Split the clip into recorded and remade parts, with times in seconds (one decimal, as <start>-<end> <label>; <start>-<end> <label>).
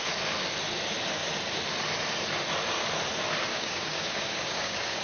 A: 0.0-3.5 recorded; 3.5-5.0 remade